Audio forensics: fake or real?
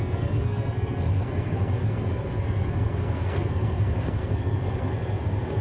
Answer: fake